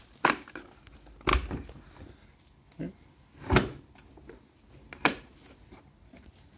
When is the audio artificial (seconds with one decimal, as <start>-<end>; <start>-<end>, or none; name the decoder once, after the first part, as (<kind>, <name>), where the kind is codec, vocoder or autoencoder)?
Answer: none